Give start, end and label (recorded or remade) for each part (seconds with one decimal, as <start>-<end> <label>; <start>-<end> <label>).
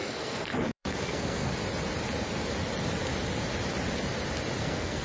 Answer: 0.0-1.6 remade; 1.6-4.6 recorded; 4.6-5.0 remade